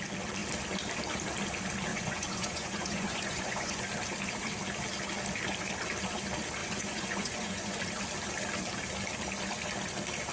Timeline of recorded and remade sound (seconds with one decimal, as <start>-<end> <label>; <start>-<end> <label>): 0.0-1.9 recorded; 1.9-3.8 remade; 3.8-6.6 recorded; 6.6-7.8 remade; 7.8-10.3 recorded